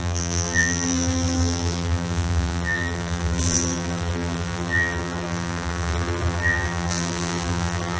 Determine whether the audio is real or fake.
fake